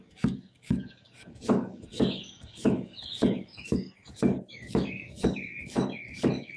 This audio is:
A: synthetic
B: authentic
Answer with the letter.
A